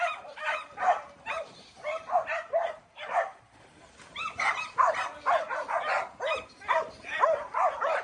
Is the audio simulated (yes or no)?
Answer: yes